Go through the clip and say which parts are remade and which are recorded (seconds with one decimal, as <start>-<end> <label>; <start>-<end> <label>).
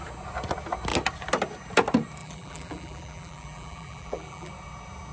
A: 0.0-2.2 recorded; 2.2-4.5 remade; 4.5-5.1 recorded